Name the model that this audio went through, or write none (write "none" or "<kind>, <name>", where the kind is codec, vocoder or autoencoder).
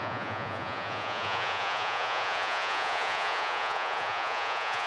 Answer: vocoder, Vocos